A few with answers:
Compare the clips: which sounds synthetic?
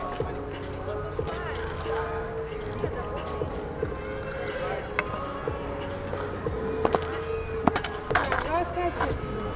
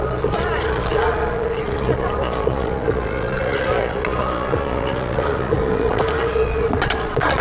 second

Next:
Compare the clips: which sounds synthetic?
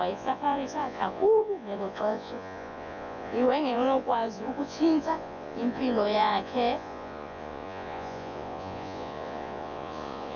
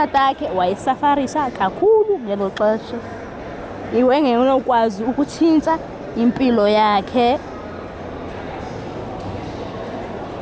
first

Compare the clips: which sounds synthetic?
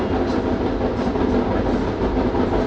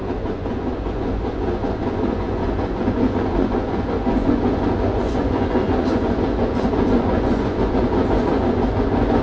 second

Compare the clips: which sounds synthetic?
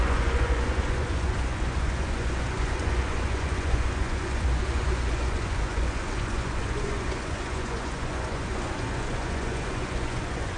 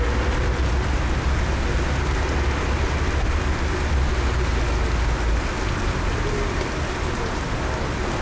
first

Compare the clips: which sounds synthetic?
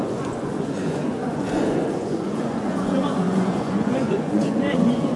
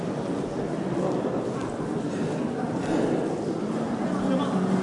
first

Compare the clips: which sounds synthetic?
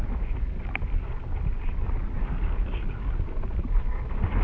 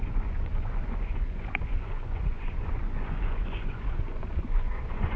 second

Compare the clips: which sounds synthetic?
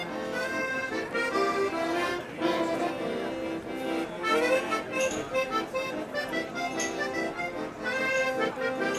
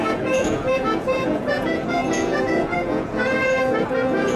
second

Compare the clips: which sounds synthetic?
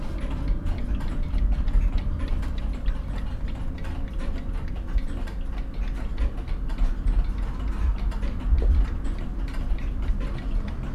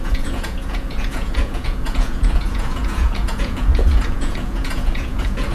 second